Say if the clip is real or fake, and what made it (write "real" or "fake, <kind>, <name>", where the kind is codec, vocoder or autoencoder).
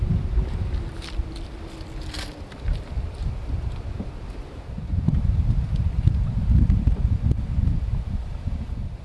fake, vocoder, BigVGAN v2